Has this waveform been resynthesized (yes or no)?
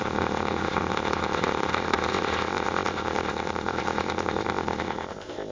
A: yes